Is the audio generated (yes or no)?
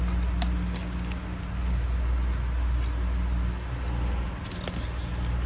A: no